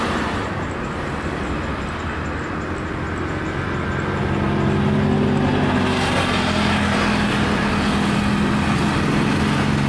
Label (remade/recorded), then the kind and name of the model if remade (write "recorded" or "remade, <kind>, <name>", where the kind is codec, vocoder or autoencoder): recorded